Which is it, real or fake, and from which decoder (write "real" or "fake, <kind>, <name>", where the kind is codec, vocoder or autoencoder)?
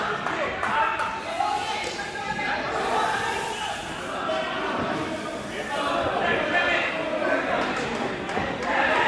real